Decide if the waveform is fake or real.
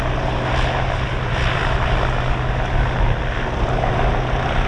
real